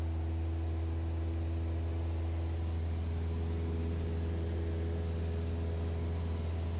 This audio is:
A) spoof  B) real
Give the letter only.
B